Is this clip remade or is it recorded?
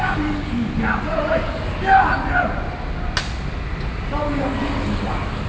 recorded